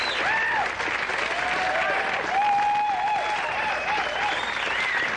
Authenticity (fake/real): real